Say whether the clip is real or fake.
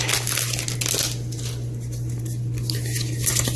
real